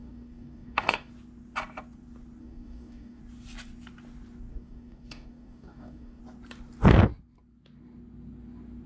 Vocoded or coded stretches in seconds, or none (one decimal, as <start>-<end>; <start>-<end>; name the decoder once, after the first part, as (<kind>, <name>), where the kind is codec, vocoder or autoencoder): 0.0-1.1 (codec, DAC); 2.4-3.2; 4.5-6.2